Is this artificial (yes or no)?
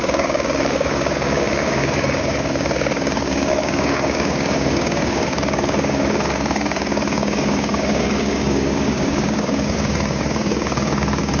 yes